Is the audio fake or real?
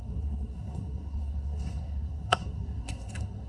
fake